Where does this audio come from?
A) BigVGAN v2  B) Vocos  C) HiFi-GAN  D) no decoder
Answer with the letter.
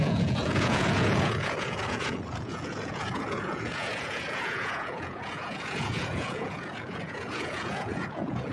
B